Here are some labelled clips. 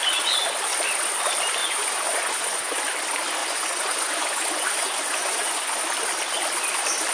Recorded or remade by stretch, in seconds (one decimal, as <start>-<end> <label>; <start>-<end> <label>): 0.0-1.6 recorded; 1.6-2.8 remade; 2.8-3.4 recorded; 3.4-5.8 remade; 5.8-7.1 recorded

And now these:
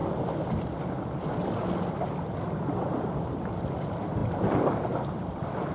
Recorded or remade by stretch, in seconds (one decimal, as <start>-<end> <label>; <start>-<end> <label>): 0.0-5.7 recorded

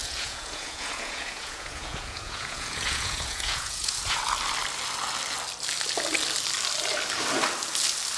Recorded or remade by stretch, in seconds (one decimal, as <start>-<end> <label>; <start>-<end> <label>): 0.0-4.2 remade; 4.2-8.2 recorded

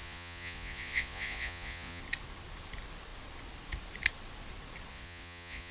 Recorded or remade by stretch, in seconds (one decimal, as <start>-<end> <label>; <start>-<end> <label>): 0.0-2.0 remade; 2.0-4.9 recorded; 4.9-5.7 remade

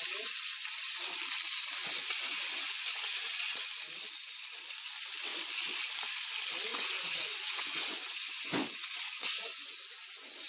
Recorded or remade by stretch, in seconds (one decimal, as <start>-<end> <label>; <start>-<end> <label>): 0.0-1.8 recorded; 1.8-3.8 remade; 3.8-6.7 recorded; 6.7-10.5 remade